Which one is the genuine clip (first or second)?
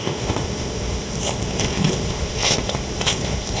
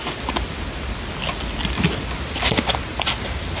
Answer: second